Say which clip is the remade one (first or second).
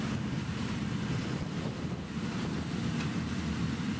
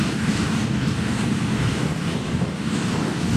second